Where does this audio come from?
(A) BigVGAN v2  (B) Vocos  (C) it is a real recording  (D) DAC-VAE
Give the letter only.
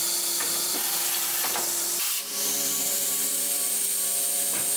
A